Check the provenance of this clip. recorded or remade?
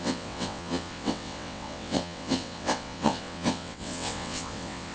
remade